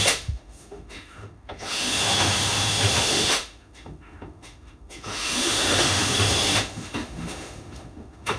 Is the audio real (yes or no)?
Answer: no